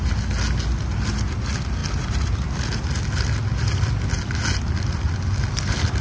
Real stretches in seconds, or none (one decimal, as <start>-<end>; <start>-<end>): 0.0-6.0